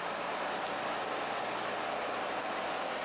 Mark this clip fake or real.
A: real